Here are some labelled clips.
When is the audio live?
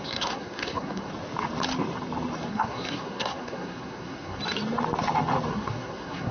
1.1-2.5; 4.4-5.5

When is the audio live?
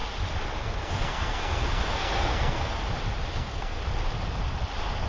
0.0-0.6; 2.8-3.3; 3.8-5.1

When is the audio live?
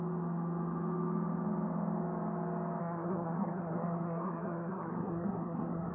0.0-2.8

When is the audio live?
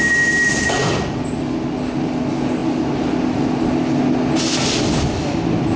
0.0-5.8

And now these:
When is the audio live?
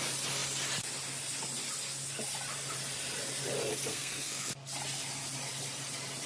0.0-3.9; 4.5-6.3